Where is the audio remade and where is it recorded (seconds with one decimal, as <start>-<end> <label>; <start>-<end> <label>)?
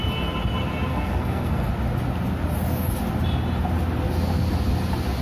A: 0.0-0.9 recorded; 0.9-1.7 remade; 1.7-5.2 recorded